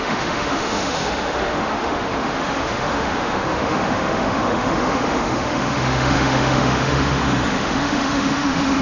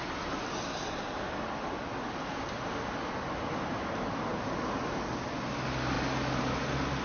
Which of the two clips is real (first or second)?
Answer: second